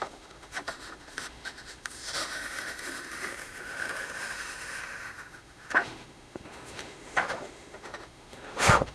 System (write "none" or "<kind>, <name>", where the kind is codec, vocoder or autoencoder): autoencoder, DAC-VAE